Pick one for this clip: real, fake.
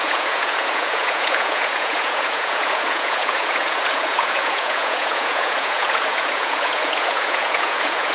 fake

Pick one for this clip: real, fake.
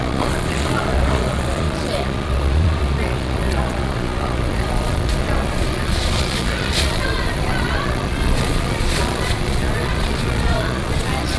fake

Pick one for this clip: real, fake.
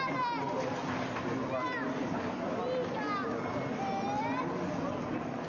real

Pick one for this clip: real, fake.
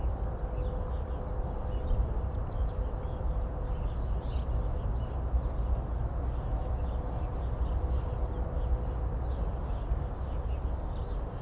real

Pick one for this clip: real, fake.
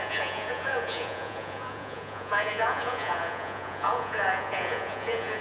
fake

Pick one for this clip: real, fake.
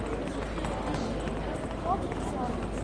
real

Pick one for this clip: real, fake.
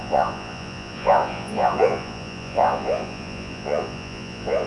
fake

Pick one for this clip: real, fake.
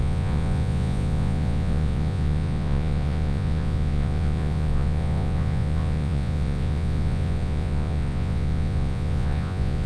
fake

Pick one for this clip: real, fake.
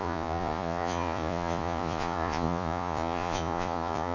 fake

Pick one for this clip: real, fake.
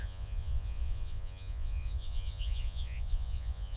fake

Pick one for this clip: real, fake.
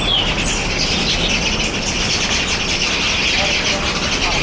real